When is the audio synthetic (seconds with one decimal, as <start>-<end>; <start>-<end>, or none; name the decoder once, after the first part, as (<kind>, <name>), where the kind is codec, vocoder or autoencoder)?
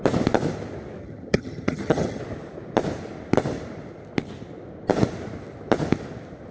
1.0-2.2 (vocoder, HiFi-GAN)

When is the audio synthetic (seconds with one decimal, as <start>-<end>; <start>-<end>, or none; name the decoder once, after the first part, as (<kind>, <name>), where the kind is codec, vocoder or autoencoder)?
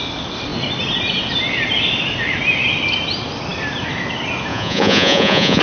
4.5-5.6 (vocoder, Vocos)